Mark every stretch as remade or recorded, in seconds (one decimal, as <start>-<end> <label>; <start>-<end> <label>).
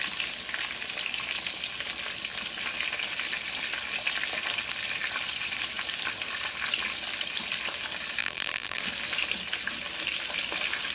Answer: 0.0-8.2 recorded; 8.2-8.8 remade; 8.8-10.9 recorded